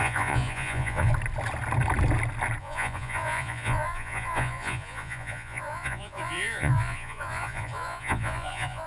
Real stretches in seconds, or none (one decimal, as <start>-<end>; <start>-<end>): 1.1-2.6